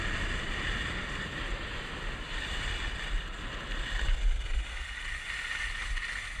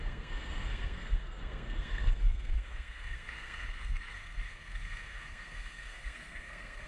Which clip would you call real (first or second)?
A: first